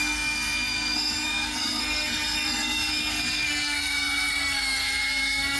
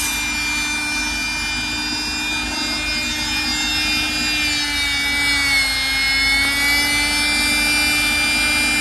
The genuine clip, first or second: second